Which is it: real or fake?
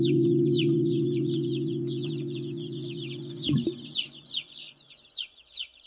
fake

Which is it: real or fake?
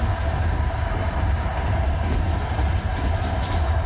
real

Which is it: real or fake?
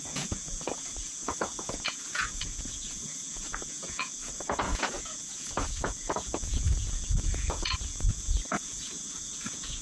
fake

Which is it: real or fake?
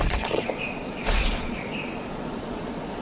fake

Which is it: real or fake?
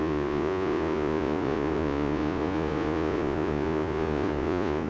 fake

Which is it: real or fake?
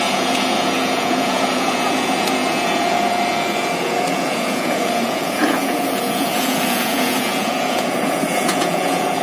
fake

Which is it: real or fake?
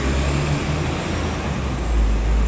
real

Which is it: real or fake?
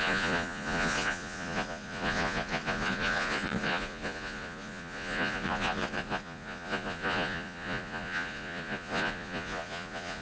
fake